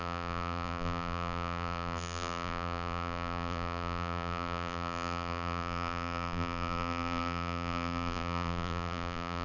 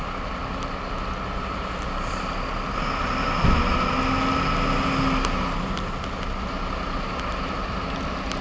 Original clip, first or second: second